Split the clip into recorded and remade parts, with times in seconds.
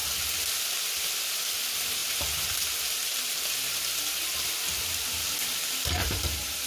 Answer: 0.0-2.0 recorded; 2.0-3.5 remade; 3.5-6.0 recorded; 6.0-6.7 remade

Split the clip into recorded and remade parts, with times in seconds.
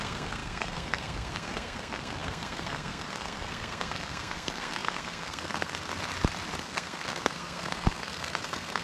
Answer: 0.0-5.9 remade; 5.9-6.6 recorded; 6.6-8.8 remade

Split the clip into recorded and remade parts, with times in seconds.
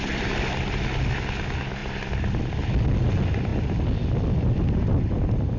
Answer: 0.0-5.6 recorded